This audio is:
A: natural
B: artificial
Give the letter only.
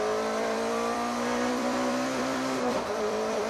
B